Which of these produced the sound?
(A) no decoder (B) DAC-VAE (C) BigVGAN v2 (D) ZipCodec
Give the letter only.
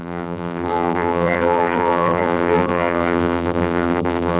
C